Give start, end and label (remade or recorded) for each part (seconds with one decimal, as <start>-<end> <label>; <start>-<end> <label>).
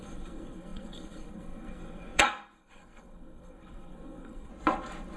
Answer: 0.0-4.5 remade; 4.5-5.2 recorded